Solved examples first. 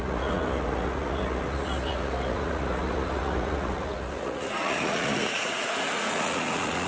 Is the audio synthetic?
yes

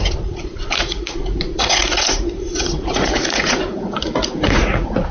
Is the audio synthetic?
yes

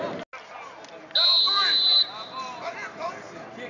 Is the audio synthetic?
no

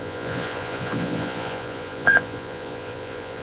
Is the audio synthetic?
yes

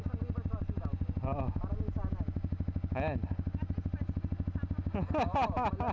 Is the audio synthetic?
no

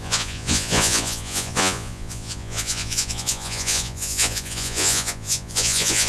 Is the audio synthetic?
yes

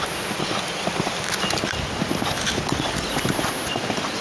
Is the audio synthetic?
no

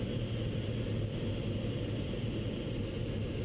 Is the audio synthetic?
no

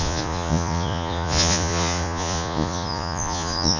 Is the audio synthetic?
yes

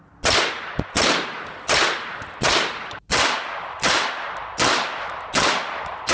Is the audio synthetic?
no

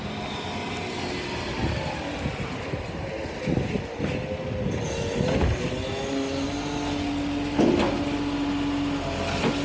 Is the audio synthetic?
no